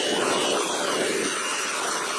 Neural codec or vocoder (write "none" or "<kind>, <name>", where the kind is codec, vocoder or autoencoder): none